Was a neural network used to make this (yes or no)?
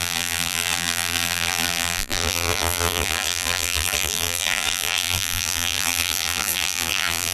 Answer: yes